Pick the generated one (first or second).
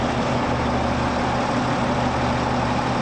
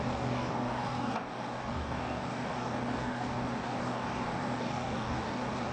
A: second